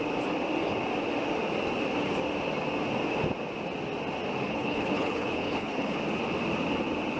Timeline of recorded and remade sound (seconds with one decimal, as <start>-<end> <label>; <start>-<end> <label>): 0.0-4.5 recorded; 4.5-6.0 remade; 6.0-7.2 recorded